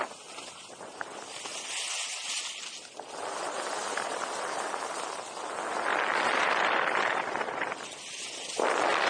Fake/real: real